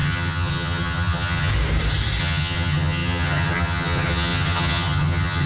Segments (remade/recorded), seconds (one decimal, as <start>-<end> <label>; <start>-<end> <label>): 0.0-1.5 remade; 1.5-2.2 recorded; 2.2-5.5 remade